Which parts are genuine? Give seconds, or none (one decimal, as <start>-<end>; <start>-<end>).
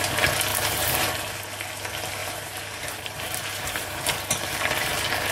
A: 0.0-0.5; 1.1-2.2; 4.0-5.3